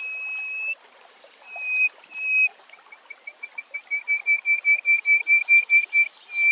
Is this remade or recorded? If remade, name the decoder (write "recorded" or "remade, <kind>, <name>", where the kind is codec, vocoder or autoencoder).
recorded